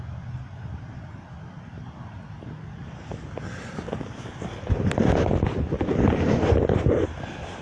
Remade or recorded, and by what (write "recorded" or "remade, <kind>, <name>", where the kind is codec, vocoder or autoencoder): recorded